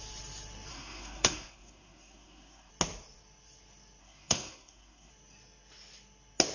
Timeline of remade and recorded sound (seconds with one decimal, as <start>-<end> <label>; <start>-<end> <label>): 0.0-0.7 recorded; 0.7-2.7 remade; 2.7-4.0 recorded; 4.0-5.1 remade; 5.1-6.5 recorded